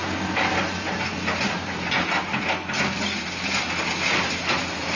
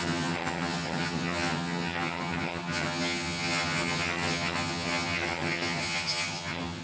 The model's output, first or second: second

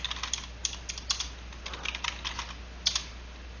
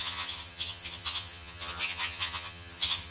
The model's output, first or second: second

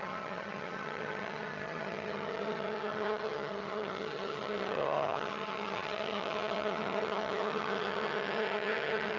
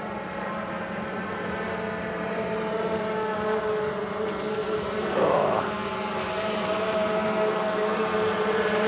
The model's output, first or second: first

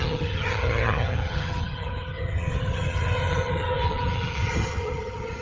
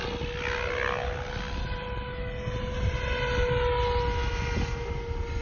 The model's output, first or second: first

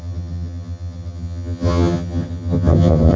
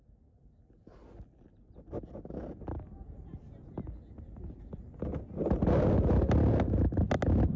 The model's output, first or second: first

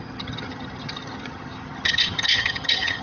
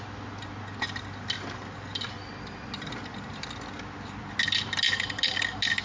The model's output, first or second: first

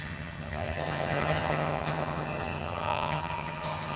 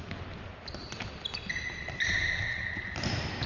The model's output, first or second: first